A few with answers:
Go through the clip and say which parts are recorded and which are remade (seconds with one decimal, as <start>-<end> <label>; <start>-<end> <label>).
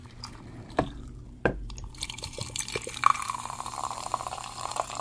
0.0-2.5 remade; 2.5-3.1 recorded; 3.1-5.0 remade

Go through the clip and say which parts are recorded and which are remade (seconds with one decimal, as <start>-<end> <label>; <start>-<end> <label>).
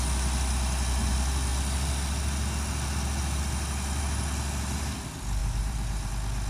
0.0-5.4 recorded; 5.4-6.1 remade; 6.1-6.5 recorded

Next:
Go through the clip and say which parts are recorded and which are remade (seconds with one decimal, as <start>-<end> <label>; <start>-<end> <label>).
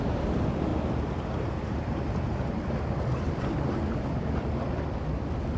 0.0-0.7 recorded; 0.7-4.0 remade; 4.0-5.6 recorded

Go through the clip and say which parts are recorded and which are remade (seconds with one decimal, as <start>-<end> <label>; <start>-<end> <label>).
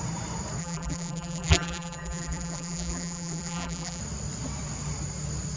0.0-0.6 recorded; 0.6-4.0 remade; 4.0-5.6 recorded